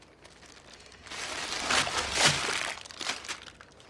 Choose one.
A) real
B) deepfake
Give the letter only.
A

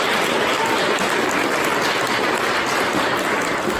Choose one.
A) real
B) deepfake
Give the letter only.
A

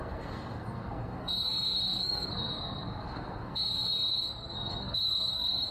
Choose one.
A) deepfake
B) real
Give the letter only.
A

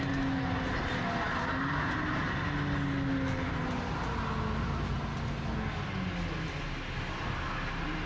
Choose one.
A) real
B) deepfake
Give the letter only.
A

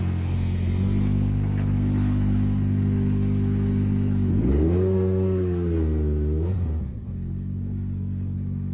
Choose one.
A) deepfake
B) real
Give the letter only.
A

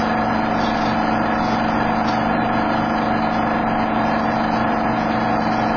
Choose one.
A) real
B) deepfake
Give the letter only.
A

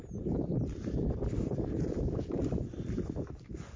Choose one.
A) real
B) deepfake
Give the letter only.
A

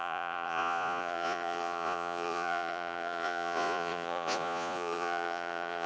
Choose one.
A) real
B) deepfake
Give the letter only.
B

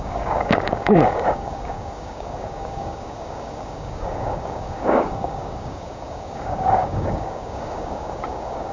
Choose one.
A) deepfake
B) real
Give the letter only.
A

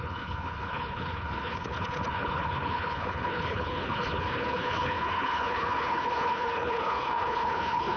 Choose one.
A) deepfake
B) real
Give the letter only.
A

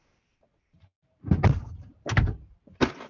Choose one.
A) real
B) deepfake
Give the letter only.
B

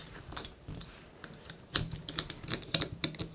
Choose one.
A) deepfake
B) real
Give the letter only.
A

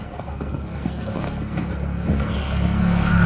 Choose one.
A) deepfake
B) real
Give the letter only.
A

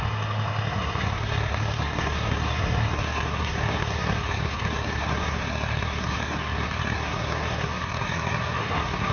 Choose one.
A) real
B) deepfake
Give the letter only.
B